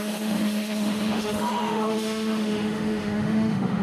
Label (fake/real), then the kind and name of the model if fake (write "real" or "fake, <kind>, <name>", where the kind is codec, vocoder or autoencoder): fake, autoencoder, DAC-VAE